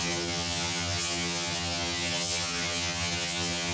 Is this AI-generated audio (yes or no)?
yes